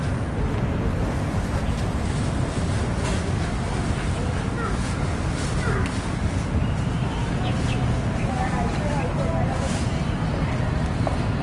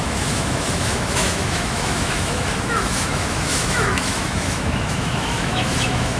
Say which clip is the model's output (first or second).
second